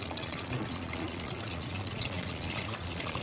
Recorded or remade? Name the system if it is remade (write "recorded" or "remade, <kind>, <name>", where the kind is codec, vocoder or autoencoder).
remade, vocoder, Vocos